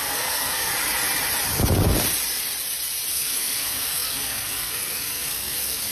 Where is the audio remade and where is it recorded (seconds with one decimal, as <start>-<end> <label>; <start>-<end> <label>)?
0.0-0.7 remade; 0.7-3.1 recorded; 3.1-5.9 remade